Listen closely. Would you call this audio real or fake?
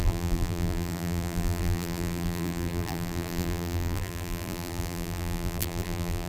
fake